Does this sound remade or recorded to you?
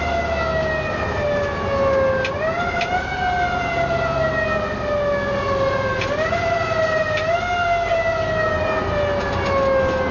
recorded